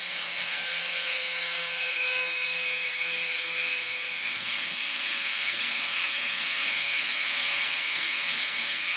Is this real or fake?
fake